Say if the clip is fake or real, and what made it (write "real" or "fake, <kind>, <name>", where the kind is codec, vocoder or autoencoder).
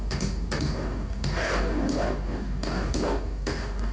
fake, codec, DAC